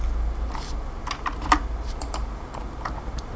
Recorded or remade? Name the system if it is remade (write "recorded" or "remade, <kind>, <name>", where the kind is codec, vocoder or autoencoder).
recorded